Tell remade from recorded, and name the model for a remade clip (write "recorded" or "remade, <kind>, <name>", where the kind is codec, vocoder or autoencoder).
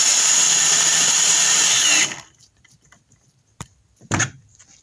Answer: remade, vocoder, BigVGAN v2